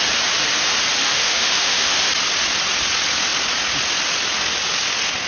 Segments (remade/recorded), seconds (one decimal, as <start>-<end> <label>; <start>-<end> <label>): 0.0-1.0 recorded; 1.0-2.1 remade; 2.1-5.3 recorded